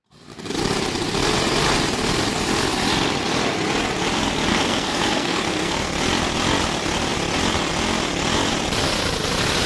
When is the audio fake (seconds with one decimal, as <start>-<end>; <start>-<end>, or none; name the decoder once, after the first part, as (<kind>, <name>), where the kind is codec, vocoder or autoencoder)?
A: 4.5-5.9 (codec, SNAC)